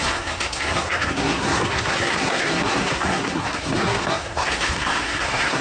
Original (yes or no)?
no